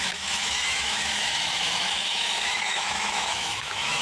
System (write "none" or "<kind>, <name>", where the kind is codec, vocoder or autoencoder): autoencoder, DAC-VAE